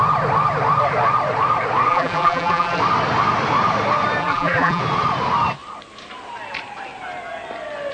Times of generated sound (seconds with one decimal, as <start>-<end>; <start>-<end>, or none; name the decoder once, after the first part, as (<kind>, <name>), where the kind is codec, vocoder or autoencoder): 1.9-2.8 (vocoder, BigVGAN v2); 4.2-4.8